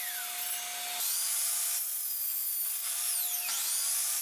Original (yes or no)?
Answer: yes